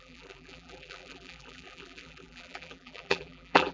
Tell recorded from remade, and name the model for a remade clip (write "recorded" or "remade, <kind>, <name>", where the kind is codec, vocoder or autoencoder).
remade, vocoder, BigVGAN v2